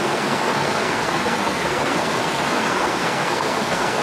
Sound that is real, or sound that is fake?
fake